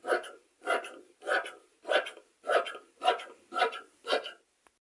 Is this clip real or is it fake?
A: real